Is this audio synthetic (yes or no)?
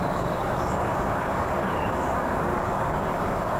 yes